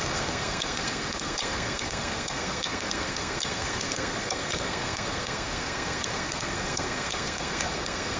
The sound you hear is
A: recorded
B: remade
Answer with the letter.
B